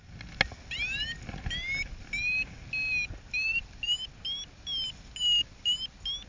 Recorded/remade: recorded